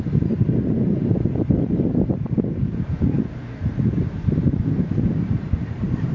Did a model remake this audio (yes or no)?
yes